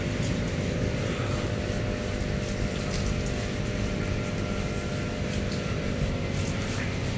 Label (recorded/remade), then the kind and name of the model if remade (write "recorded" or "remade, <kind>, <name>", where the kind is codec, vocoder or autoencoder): recorded